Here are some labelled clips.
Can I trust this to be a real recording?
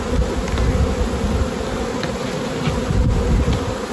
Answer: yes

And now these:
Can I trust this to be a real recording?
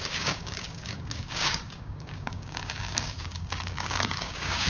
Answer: no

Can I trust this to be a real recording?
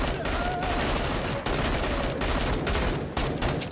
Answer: yes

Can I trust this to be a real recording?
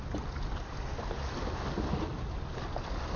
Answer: yes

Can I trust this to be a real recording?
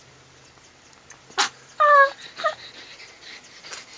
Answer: yes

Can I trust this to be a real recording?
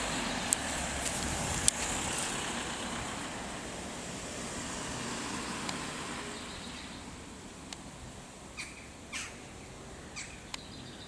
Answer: yes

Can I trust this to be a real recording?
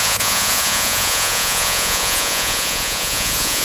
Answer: no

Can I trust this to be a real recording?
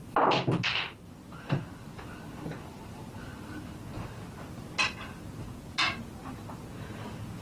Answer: yes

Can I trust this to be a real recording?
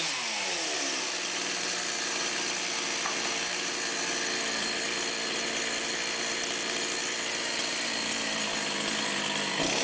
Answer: yes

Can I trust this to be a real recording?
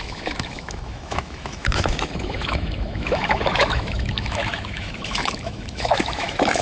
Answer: no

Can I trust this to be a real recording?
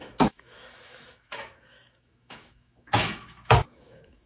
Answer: no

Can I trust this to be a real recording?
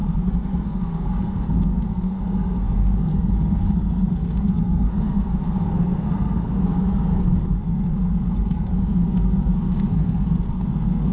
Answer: no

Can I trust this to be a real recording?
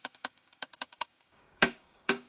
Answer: no